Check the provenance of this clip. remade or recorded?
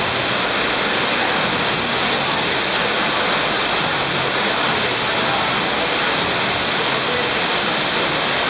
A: recorded